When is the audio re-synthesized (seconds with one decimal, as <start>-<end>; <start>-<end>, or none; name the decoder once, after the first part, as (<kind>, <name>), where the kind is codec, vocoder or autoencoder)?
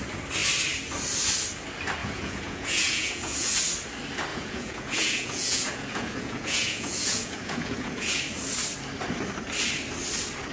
2.0-3.5 (vocoder, Vocos); 4.3-8.2